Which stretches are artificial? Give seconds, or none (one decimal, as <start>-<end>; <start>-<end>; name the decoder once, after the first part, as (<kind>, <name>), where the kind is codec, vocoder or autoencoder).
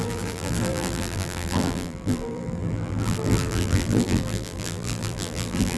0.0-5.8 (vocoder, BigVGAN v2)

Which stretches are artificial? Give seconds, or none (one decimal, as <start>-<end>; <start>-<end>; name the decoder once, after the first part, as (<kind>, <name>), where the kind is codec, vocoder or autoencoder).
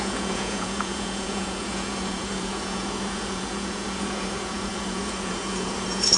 0.0-6.2 (vocoder, Vocos)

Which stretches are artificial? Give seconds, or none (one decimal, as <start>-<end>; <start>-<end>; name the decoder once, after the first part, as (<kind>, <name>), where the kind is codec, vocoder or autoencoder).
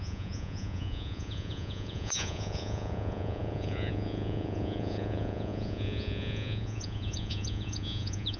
0.0-8.4 (vocoder, Vocos)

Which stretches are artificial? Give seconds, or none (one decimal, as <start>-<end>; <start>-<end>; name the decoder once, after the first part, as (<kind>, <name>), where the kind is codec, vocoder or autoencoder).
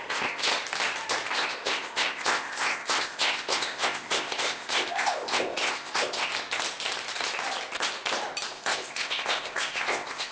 0.0-0.5 (codec, ZipCodec); 1.3-6.3; 8.5-10.3